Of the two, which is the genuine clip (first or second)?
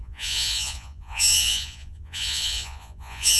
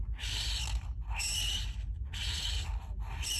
second